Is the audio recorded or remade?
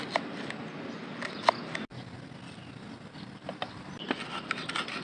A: recorded